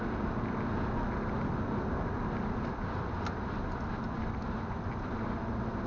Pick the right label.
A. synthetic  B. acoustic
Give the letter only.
B